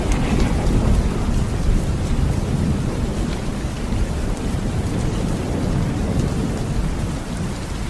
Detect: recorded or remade remade